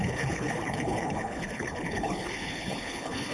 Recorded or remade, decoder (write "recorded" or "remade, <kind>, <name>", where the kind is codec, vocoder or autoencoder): remade, codec, HILCodec